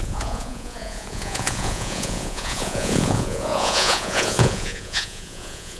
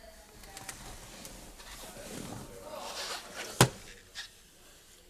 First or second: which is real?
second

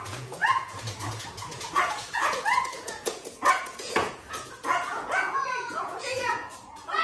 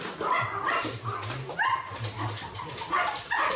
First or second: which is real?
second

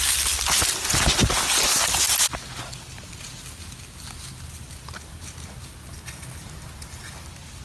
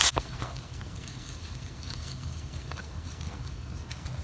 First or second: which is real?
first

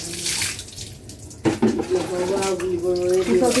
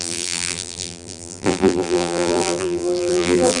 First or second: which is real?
first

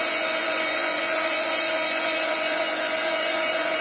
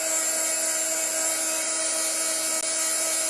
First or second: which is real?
second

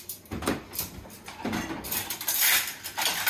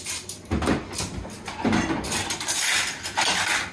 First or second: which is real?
second